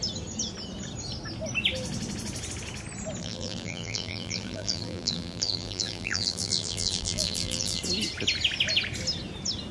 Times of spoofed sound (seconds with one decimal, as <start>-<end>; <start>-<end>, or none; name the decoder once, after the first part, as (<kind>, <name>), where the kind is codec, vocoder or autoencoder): 3.2-7.8 (vocoder, BigVGAN v2)